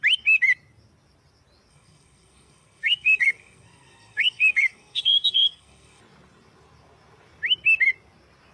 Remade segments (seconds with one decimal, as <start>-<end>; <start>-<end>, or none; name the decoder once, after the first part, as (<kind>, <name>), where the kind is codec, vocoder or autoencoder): 1.7-6.0 (codec, SNAC)